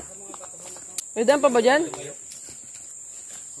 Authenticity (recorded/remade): recorded